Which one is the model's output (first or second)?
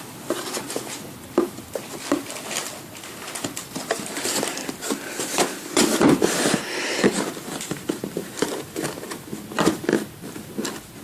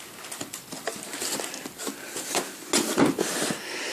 first